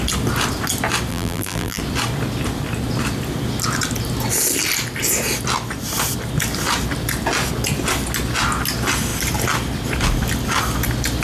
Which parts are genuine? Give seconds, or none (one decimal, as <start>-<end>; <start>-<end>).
0.0-1.1; 1.8-11.2